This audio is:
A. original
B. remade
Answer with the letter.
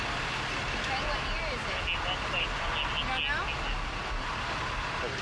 A